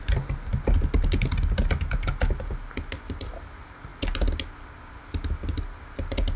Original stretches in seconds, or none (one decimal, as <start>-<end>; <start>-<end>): 0.0-6.4